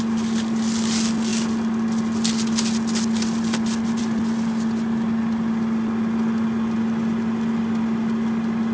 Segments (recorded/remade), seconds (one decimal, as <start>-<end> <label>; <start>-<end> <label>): 0.0-8.7 recorded